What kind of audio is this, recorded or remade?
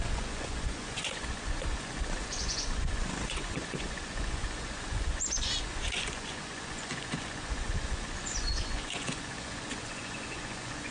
remade